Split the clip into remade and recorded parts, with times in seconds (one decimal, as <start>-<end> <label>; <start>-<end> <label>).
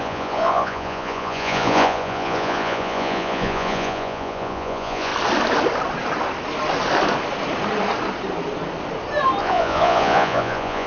0.0-5.1 remade; 5.1-9.4 recorded; 9.4-10.9 remade